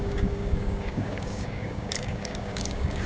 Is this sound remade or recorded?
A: remade